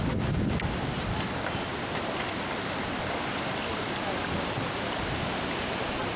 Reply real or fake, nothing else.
real